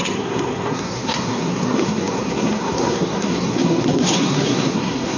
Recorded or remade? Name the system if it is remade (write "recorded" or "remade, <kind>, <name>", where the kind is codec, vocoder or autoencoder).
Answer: remade, codec, SNAC